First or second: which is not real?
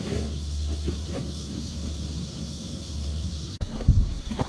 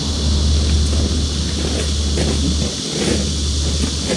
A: first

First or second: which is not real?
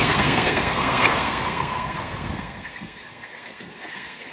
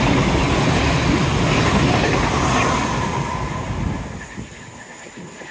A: first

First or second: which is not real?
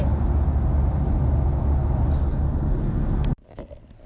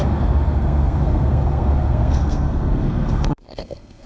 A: second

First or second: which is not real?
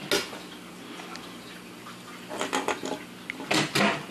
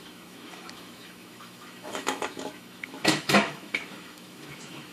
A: second